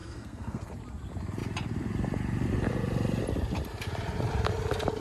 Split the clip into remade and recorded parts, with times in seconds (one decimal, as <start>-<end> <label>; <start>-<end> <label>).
0.0-0.7 remade; 0.7-5.0 recorded